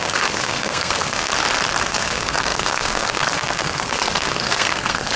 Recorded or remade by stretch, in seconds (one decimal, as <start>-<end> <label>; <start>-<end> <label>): 0.0-1.3 remade; 1.3-1.8 recorded; 1.8-5.2 remade